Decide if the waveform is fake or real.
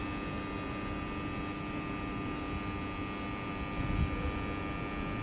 real